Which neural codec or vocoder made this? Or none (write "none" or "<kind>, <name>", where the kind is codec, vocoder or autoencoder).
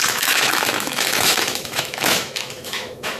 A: autoencoder, DAC-VAE